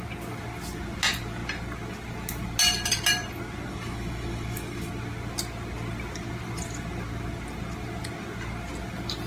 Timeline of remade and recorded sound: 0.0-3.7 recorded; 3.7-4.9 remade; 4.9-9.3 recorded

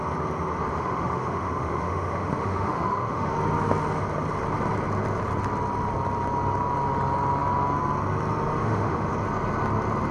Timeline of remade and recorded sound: 0.0-0.7 recorded; 0.7-3.3 remade; 3.3-8.6 recorded; 8.6-9.1 remade; 9.1-10.1 recorded

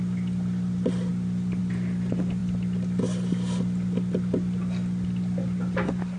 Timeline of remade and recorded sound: 0.0-6.2 recorded

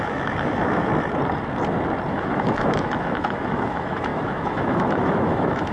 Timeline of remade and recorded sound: 0.0-0.9 remade; 0.9-2.1 recorded; 2.1-5.7 remade